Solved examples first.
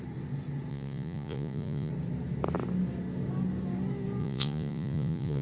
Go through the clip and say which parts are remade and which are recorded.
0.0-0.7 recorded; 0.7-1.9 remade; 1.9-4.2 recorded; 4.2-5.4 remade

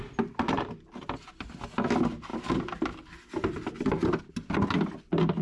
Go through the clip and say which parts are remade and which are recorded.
0.0-5.4 recorded

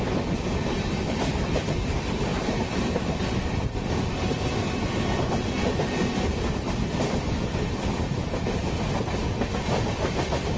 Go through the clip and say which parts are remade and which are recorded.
0.0-10.6 recorded

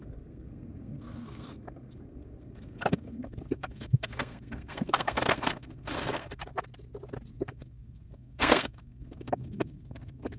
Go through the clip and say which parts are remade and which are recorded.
0.0-6.4 remade; 6.4-7.3 recorded; 7.3-10.4 remade

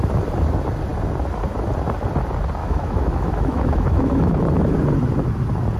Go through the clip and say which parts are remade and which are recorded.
0.0-2.6 recorded; 2.6-4.4 remade; 4.4-5.8 recorded

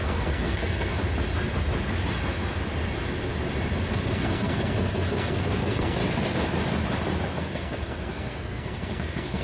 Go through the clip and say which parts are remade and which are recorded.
0.0-1.0 remade; 1.0-3.9 recorded; 3.9-6.0 remade; 6.0-7.3 recorded; 7.3-9.4 remade

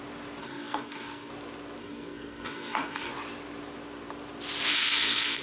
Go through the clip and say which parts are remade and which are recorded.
0.0-0.4 recorded; 0.4-1.3 remade; 1.3-1.8 recorded; 1.8-3.1 remade; 3.1-4.7 recorded; 4.7-5.4 remade

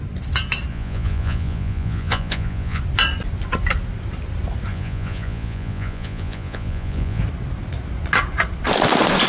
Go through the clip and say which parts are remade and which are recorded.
0.0-0.7 recorded; 0.7-2.8 remade; 2.8-4.7 recorded; 4.7-7.2 remade; 7.2-9.3 recorded